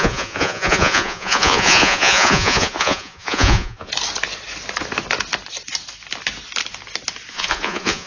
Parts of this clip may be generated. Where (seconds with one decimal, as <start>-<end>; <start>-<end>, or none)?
0.0-3.9; 7.3-8.1